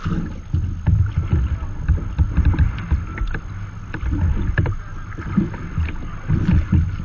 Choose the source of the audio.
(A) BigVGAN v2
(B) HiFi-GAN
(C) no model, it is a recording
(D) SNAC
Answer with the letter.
C